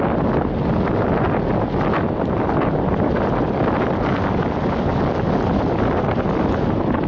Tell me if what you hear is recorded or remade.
recorded